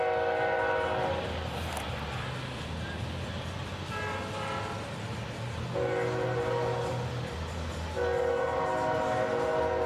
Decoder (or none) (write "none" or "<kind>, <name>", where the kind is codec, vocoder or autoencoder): none